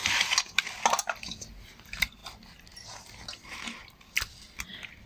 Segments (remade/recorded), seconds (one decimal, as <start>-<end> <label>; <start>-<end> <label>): 0.0-5.1 recorded